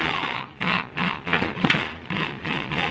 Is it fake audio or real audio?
fake